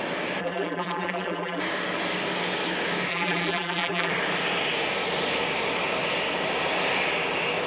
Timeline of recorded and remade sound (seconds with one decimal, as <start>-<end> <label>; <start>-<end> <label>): 0.0-0.4 recorded; 0.4-1.6 remade; 1.6-3.1 recorded; 3.1-4.1 remade; 4.1-7.7 recorded